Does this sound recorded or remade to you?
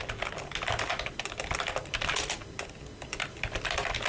recorded